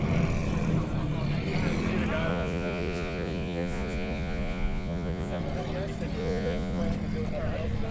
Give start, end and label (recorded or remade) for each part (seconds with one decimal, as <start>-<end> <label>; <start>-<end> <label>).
0.0-2.3 recorded; 2.3-5.4 remade; 5.4-6.2 recorded; 6.2-6.8 remade; 6.8-7.9 recorded